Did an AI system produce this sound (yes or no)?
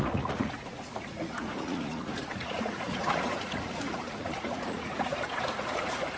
yes